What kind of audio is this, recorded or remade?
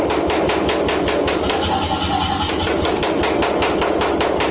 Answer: recorded